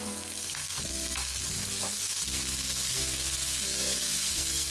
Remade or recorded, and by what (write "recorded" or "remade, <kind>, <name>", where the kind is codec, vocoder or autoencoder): remade, codec, SNAC